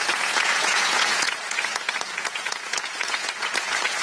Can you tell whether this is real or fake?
fake